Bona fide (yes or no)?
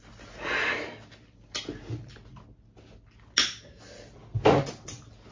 yes